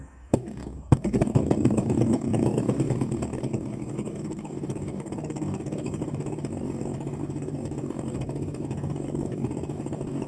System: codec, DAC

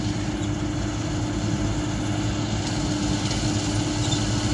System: none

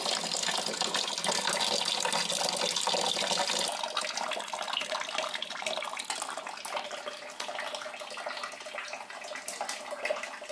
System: none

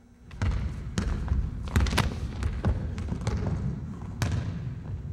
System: none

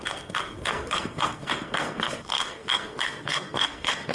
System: codec, SNAC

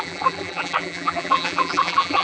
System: vocoder, BigVGAN v2